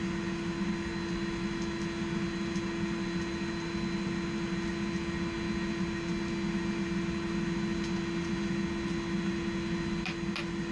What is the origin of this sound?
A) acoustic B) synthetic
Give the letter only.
A